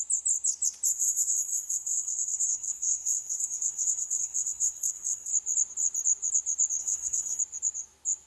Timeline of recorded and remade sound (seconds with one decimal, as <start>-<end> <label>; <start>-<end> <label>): 0.0-0.9 recorded; 0.9-5.3 remade; 5.3-6.8 recorded; 6.8-7.4 remade; 7.4-8.3 recorded